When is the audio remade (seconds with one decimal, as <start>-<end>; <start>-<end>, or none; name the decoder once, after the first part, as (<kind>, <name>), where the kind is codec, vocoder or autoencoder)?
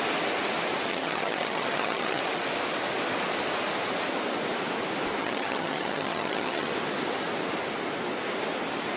0.9-2.2 (vocoder, HiFi-GAN); 5.2-6.7